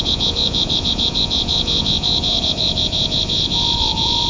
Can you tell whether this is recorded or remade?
remade